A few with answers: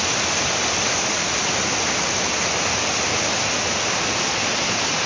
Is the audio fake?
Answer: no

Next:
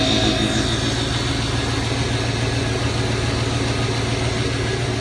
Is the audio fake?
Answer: no